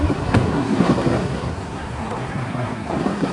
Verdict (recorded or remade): remade